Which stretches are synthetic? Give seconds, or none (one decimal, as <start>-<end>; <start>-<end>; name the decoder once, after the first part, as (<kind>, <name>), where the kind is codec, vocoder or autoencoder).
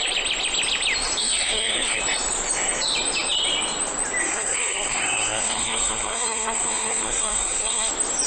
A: 1.2-2.0 (codec, SNAC); 4.2-7.9